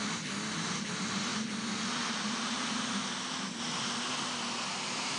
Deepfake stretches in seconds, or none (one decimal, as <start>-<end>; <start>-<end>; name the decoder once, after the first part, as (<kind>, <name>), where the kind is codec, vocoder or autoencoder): none